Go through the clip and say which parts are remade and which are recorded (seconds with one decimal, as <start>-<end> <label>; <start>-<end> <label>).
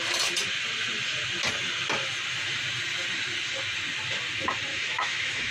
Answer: 0.0-4.7 recorded; 4.7-5.5 remade